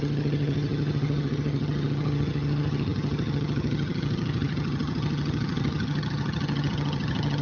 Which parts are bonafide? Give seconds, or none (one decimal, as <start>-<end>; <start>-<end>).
none